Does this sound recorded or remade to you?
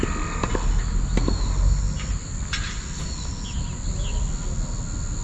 recorded